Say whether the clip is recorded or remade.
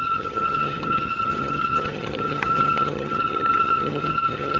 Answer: remade